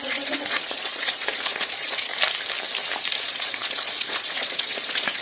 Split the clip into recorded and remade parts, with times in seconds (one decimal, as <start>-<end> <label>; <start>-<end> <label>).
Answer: 0.0-2.1 remade; 2.1-3.2 recorded; 3.2-5.2 remade